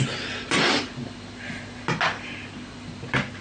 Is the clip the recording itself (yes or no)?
yes